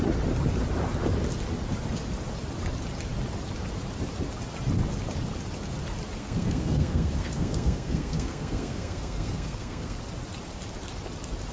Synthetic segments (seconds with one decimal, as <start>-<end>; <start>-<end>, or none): 6.2-10.0